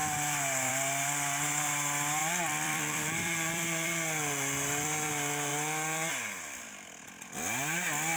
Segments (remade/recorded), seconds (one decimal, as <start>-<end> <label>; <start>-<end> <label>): 0.0-2.2 recorded; 2.2-5.1 remade; 5.1-5.5 recorded; 5.5-6.1 remade; 6.1-8.2 recorded

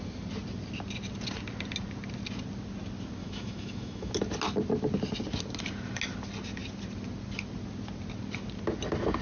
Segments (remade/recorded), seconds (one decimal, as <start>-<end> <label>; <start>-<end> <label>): 0.0-3.2 recorded; 3.2-4.1 remade; 4.1-9.2 recorded

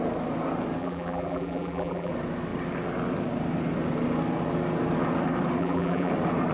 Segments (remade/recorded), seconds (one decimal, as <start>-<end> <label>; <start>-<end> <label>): 0.0-0.8 recorded; 0.8-2.1 remade; 2.1-5.6 recorded; 5.6-6.1 remade; 6.1-6.5 recorded

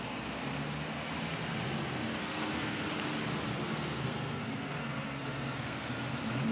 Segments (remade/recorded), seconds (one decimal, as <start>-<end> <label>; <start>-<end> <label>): 0.0-2.2 recorded; 2.2-2.9 remade; 2.9-3.6 recorded; 3.6-5.9 remade; 5.9-6.5 recorded

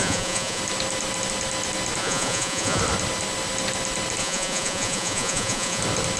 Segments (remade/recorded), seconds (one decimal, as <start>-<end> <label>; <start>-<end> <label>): 0.0-0.6 remade; 0.6-2.0 recorded; 2.0-2.8 remade; 2.8-4.2 recorded; 4.2-5.8 remade; 5.8-6.2 recorded

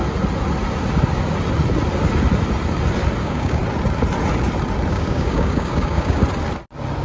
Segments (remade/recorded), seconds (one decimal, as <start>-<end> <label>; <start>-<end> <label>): 0.0-3.2 recorded; 3.2-3.6 remade; 3.6-4.9 recorded; 4.9-6.2 remade; 6.2-7.0 recorded

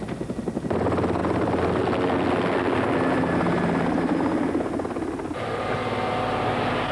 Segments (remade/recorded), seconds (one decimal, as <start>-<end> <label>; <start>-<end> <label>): 0.0-6.9 recorded